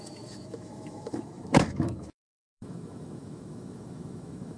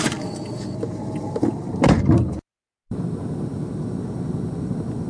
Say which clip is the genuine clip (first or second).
second